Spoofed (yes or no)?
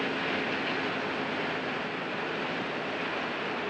no